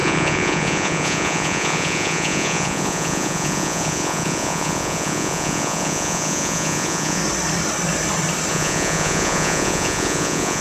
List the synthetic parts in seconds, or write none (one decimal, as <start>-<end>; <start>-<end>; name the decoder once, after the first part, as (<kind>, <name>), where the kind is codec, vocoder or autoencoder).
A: 0.0-7.2 (vocoder, Vocos); 8.5-10.6